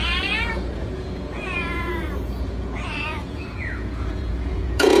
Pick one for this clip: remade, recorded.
remade